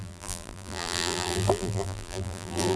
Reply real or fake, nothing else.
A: fake